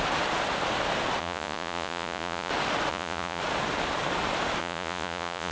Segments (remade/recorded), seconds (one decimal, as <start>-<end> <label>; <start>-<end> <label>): 0.0-1.2 recorded; 1.2-2.5 remade; 2.5-2.9 recorded; 2.9-3.4 remade; 3.4-4.6 recorded; 4.6-5.5 remade